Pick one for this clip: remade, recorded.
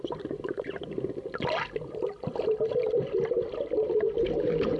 recorded